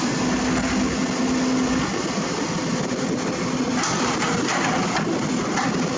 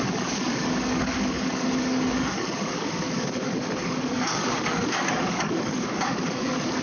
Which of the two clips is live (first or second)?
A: first